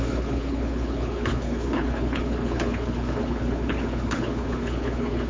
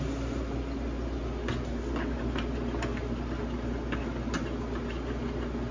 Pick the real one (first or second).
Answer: second